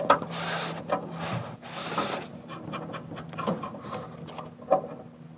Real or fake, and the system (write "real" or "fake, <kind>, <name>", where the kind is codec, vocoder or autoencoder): real